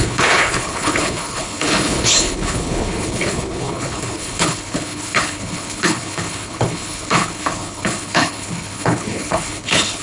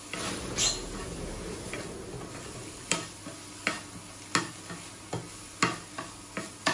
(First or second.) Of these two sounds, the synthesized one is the first